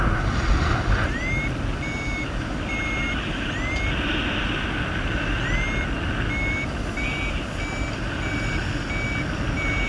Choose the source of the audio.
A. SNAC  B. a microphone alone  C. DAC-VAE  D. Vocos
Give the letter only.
B